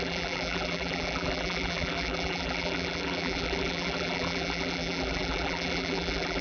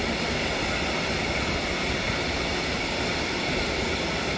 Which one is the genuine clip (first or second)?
second